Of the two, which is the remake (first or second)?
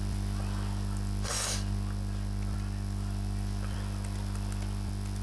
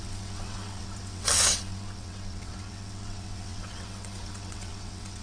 second